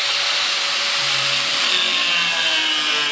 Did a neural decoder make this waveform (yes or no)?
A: no